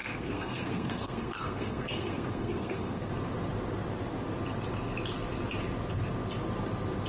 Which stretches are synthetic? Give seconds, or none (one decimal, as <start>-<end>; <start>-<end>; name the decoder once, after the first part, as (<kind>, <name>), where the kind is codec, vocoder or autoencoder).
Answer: 0.0-3.1 (codec, SNAC)